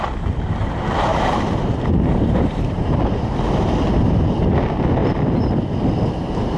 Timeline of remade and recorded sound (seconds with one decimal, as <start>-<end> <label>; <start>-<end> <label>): 0.0-1.1 recorded; 1.1-3.4 remade; 3.4-6.6 recorded